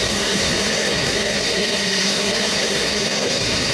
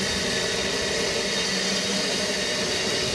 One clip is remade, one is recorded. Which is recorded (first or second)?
second